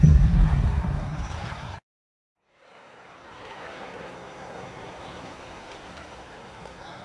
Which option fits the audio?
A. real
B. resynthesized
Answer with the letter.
B